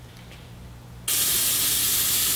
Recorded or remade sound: recorded